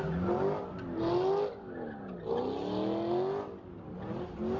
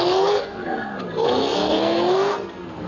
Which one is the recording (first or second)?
first